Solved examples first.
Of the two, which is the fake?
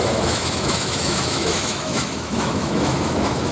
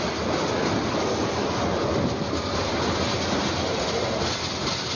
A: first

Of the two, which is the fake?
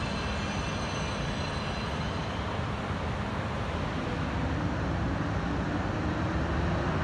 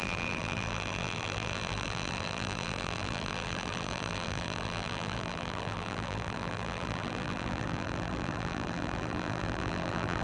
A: second